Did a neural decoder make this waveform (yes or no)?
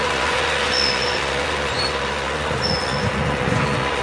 yes